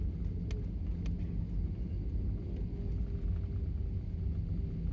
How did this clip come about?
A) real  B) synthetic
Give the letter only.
A